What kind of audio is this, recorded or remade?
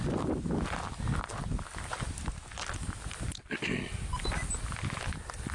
recorded